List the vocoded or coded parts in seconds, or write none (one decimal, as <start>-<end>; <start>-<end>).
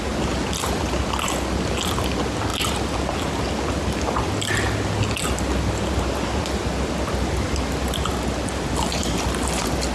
none